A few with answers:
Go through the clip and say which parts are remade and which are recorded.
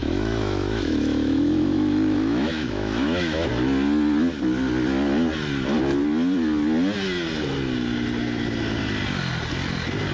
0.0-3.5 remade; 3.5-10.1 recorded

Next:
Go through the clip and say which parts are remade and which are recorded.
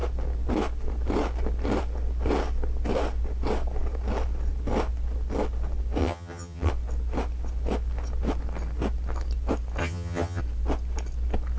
0.0-6.0 recorded; 6.0-6.7 remade; 6.7-9.8 recorded; 9.8-10.4 remade; 10.4-11.6 recorded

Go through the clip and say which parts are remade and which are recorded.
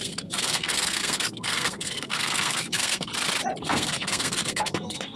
0.0-3.1 remade; 3.1-3.6 recorded; 3.6-5.2 remade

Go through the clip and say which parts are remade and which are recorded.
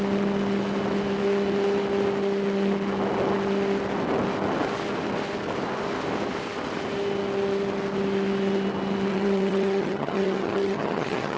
0.0-9.1 recorded; 9.1-11.4 remade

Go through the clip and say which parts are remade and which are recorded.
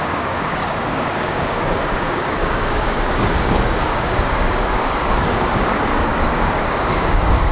0.0-7.5 remade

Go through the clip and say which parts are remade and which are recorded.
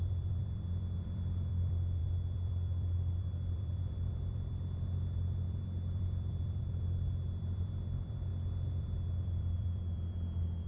0.0-8.3 remade; 8.3-8.8 recorded; 8.8-10.7 remade